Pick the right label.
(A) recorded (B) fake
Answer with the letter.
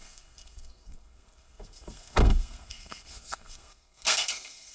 B